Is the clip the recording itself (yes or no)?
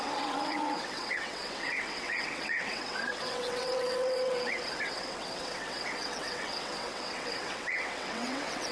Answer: no